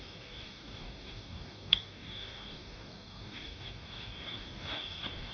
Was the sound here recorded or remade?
remade